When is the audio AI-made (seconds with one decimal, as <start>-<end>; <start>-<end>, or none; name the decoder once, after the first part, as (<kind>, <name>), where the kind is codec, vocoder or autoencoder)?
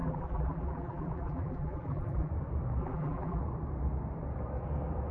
0.0-2.3 (vocoder, BigVGAN v2); 2.8-3.4